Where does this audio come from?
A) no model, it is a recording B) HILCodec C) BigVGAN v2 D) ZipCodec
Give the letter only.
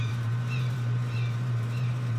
C